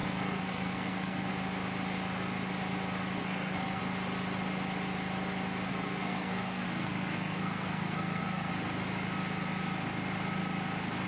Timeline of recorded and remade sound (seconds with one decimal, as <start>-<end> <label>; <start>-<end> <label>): 0.0-1.3 remade; 1.3-3.2 recorded; 3.2-3.8 remade; 3.8-5.7 recorded; 5.7-8.5 remade; 8.5-11.1 recorded